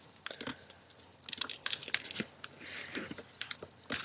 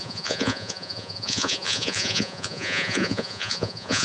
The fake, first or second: second